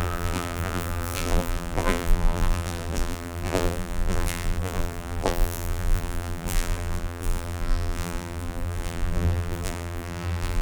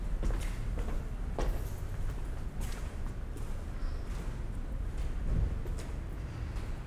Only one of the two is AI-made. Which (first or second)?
first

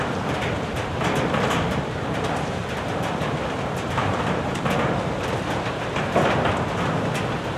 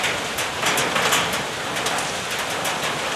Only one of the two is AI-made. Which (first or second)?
first